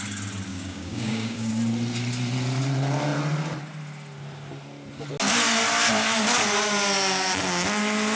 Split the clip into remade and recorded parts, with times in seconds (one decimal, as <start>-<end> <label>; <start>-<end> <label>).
0.0-0.5 recorded; 0.5-1.5 remade; 1.5-8.1 recorded